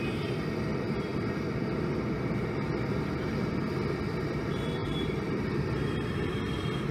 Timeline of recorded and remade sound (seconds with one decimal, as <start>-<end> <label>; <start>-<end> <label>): 0.0-4.8 recorded; 4.8-5.7 remade; 5.7-6.9 recorded